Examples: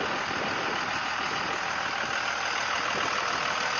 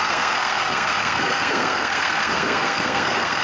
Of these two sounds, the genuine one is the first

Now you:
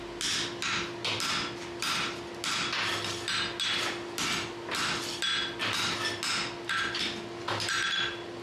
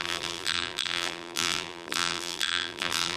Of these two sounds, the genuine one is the first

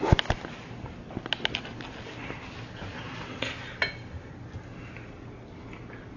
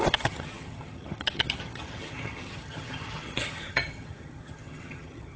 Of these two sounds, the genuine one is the first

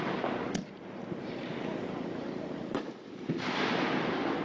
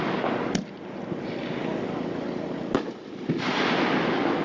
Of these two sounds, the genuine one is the second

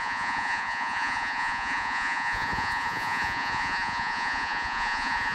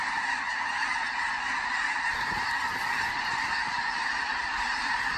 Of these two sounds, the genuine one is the second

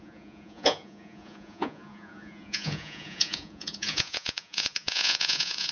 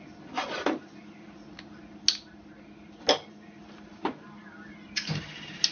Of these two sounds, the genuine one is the second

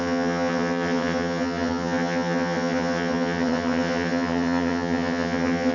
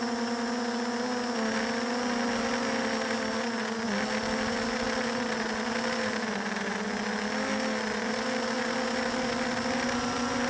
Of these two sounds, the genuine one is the second